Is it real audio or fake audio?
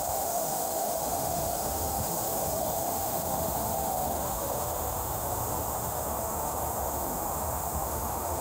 fake